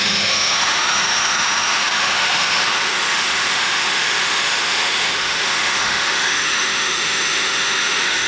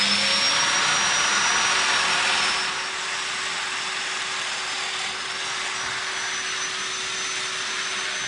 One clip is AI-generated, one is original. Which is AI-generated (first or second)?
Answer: first